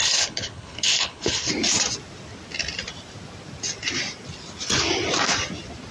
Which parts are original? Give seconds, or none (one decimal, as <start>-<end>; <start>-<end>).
1.5-5.9